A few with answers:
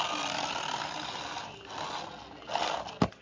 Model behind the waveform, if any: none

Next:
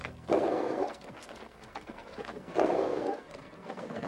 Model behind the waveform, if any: codec, SNAC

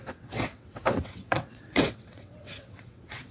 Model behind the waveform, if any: vocoder, WaveNeXt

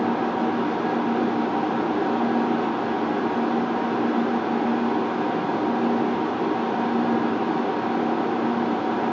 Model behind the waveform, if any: none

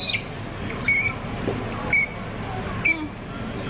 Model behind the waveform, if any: none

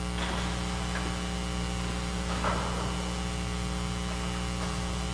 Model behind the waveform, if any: none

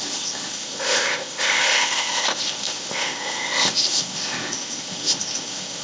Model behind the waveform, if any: codec, ZipCodec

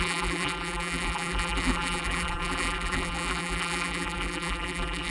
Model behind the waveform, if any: vocoder, BigVGAN v2